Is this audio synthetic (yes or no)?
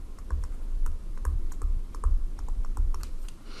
yes